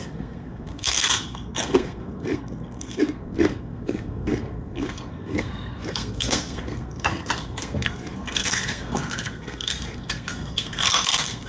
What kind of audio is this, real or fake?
fake